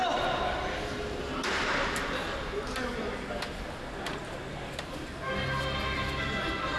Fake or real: real